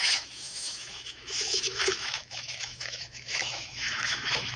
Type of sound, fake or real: fake